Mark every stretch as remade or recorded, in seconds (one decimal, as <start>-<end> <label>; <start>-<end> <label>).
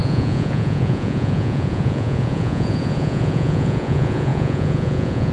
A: 0.0-5.3 remade